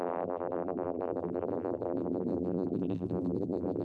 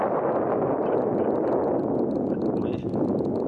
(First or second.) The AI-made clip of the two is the first